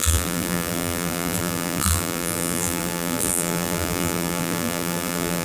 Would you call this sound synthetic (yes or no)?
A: yes